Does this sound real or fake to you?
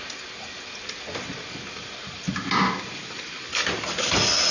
real